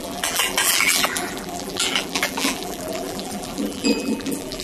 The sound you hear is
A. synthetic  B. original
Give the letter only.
A